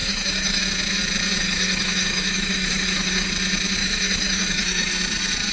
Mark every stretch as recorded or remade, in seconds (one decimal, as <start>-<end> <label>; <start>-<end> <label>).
0.0-0.6 remade; 0.6-1.4 recorded; 1.4-3.3 remade; 3.3-3.8 recorded; 3.8-4.9 remade; 4.9-5.5 recorded